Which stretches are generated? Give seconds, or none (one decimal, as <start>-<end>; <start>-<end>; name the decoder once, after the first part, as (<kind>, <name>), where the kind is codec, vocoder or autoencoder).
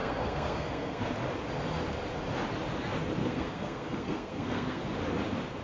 0.0-1.0 (codec, SNAC); 3.2-4.8